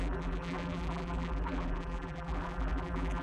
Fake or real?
fake